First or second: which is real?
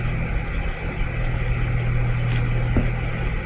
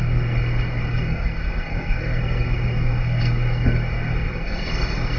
first